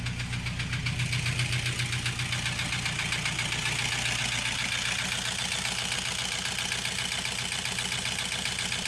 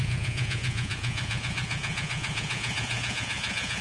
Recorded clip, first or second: first